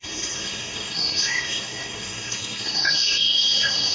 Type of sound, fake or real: fake